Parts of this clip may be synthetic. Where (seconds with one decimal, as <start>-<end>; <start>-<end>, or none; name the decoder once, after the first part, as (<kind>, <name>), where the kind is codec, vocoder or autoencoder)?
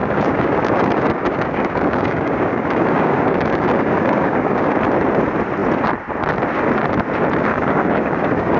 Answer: 0.0-4.8 (codec, DAC); 7.5-8.6